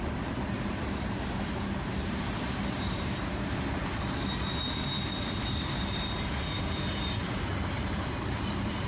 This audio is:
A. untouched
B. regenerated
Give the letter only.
B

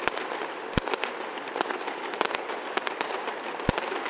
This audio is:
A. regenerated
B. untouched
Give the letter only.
B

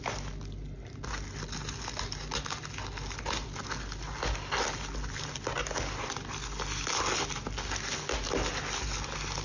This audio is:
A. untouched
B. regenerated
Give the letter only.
A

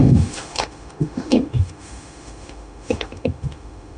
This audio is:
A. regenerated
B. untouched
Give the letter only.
A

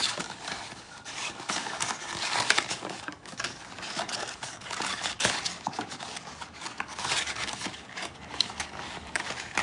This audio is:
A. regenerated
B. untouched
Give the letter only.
A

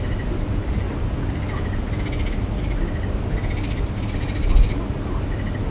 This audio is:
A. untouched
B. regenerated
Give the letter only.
A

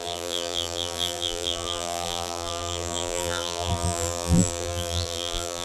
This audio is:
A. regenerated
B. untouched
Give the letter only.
A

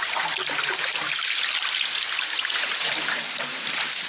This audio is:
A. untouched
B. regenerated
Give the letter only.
A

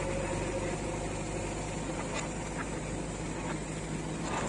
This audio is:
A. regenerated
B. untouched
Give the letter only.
B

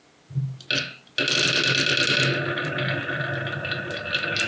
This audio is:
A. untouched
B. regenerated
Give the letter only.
A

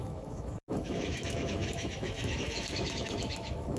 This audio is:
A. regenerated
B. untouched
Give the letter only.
A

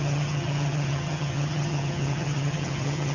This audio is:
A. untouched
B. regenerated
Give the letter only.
B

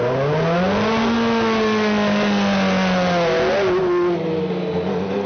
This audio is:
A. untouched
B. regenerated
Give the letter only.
A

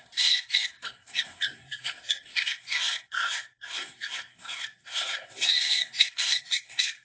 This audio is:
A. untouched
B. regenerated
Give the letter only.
B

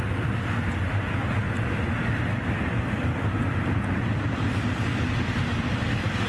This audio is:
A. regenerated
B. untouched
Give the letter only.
B